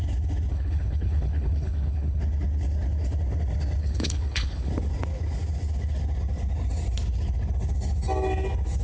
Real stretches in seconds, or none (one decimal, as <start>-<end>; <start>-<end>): 0.0-0.5; 2.2-3.8; 4.7-8.8